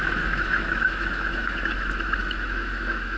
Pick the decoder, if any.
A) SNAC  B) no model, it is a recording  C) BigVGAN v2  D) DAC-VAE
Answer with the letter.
D